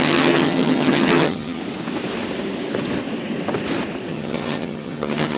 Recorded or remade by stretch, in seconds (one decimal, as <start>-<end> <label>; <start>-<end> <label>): 0.0-1.6 remade; 1.6-4.1 recorded; 4.1-5.4 remade